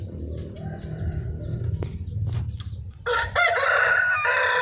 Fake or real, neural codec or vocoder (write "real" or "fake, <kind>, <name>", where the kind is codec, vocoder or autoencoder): real